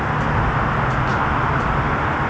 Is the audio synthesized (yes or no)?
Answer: no